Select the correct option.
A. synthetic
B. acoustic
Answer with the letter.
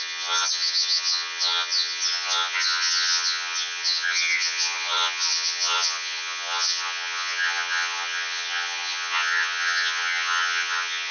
A